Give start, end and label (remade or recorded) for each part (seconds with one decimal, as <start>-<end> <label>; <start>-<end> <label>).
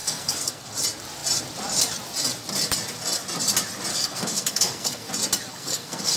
0.0-0.7 remade; 0.7-3.9 recorded; 3.9-5.1 remade; 5.1-5.5 recorded; 5.5-6.2 remade